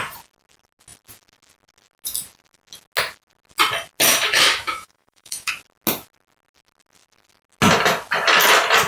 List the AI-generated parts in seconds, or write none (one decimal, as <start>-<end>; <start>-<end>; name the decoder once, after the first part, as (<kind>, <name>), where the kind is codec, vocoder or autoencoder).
4.1-5.5 (autoencoder, DAC-VAE)